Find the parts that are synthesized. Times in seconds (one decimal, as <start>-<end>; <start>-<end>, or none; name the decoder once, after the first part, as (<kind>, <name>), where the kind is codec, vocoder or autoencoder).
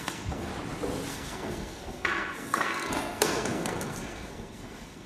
0.0-0.5 (codec, SNAC); 1.1-5.1